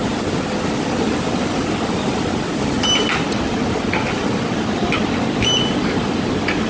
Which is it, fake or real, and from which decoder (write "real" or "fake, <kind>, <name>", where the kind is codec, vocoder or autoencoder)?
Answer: real